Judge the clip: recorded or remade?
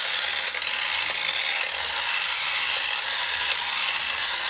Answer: recorded